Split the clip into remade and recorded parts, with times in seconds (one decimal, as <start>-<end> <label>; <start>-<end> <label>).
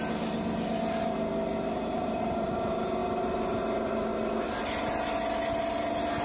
0.0-6.2 recorded